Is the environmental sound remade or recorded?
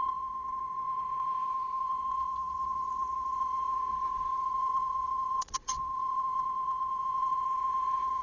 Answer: remade